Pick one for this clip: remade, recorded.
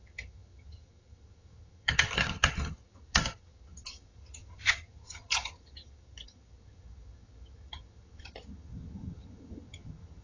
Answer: remade